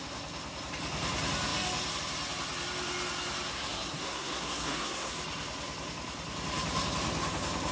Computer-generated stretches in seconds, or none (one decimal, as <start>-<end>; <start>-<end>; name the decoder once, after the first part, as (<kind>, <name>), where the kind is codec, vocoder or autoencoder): 3.5-5.1 (codec, SNAC)